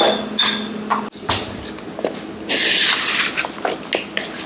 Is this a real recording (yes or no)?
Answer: yes